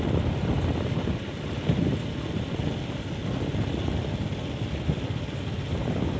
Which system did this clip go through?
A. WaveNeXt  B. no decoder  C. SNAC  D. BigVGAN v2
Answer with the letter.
B